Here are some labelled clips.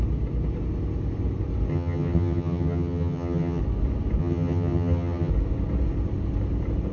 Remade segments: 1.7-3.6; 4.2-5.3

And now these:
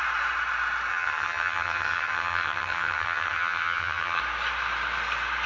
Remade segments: 0.9-4.2

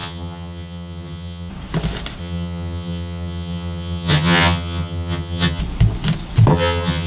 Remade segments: 0.0-1.5; 2.2-5.6; 6.5-7.1

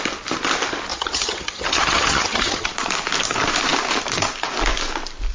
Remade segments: 0.9-2.7

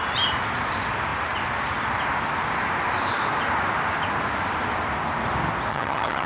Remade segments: 5.7-6.3

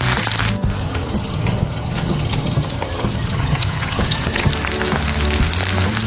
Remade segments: 0.8-4.5

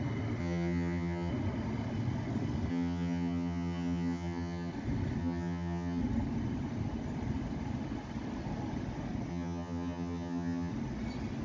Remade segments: 0.4-1.3; 2.7-4.7; 5.2-6.0; 9.3-10.7

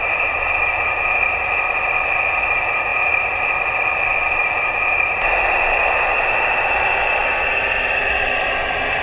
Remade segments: none